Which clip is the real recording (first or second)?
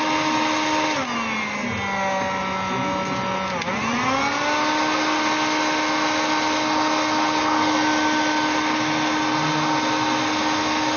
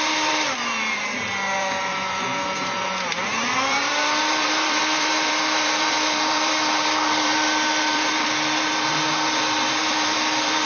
first